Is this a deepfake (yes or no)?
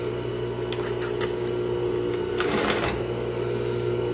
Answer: no